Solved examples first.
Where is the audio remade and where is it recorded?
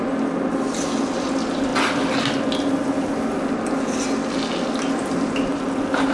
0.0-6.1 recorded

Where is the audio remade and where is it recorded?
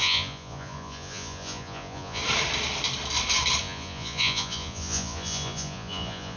0.0-2.2 remade; 2.2-3.6 recorded; 3.6-6.4 remade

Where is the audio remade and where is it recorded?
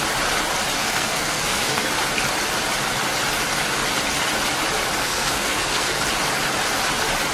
0.0-0.8 recorded; 0.8-1.9 remade; 1.9-5.0 recorded; 5.0-6.0 remade; 6.0-7.3 recorded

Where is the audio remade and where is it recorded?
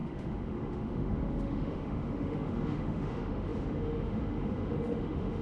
0.0-5.4 remade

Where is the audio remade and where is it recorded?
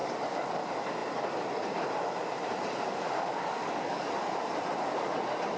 0.0-0.6 remade; 0.6-3.3 recorded; 3.3-4.1 remade; 4.1-5.6 recorded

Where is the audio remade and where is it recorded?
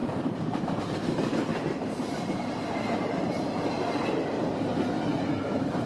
0.0-0.8 remade; 0.8-1.5 recorded; 1.5-4.0 remade; 4.0-5.9 recorded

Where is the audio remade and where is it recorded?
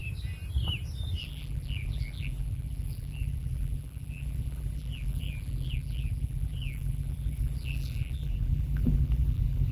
0.0-1.2 recorded; 1.2-9.7 remade